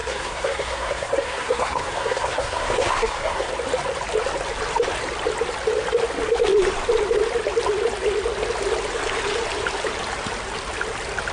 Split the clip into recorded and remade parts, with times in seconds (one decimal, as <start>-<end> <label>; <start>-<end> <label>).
0.0-3.5 remade; 3.5-11.3 recorded